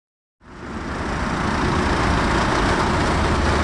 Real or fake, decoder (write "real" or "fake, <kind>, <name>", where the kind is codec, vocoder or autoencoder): real